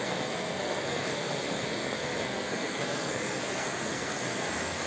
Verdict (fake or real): fake